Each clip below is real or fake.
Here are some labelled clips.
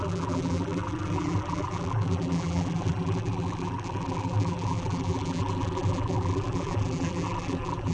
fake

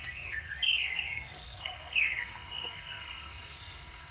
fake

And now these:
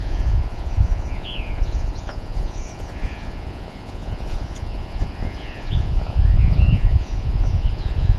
fake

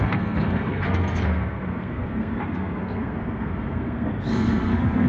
fake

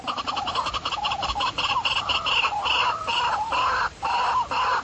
real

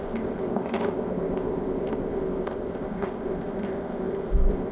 fake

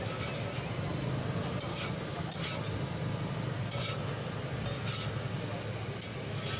real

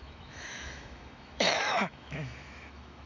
fake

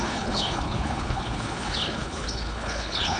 fake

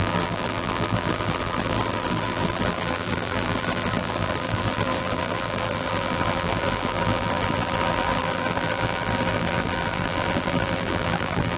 fake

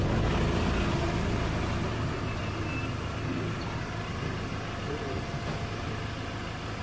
real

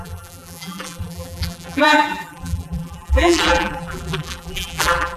fake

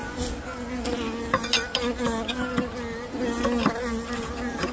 real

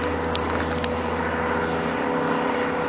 real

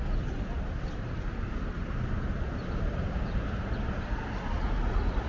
real